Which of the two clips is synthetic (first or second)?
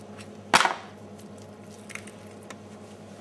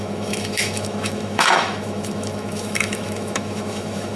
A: second